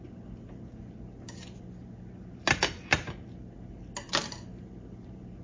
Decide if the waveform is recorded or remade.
recorded